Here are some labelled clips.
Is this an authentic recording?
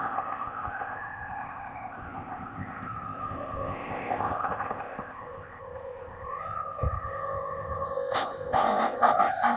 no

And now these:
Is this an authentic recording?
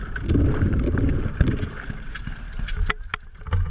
yes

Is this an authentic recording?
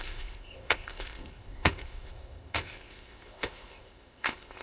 no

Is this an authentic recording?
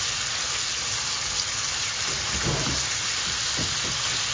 yes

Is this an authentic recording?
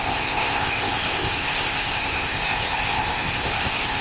no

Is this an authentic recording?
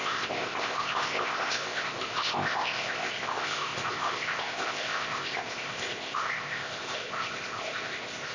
no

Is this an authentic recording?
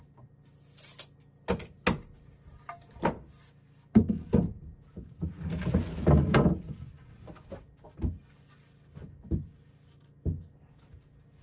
yes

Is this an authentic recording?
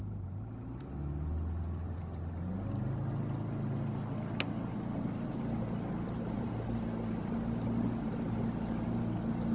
yes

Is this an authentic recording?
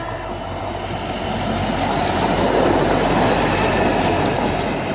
yes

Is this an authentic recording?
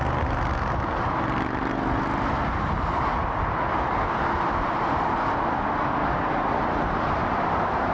yes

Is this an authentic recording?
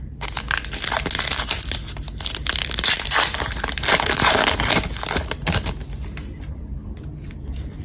yes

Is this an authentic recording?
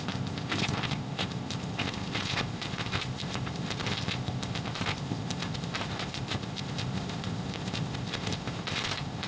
no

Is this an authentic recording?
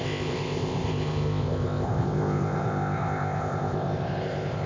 no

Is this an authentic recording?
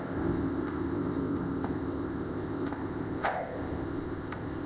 no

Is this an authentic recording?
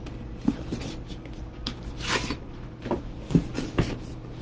yes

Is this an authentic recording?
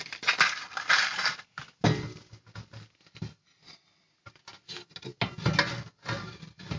yes